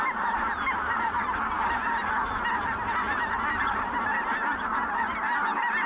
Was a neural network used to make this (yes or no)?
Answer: no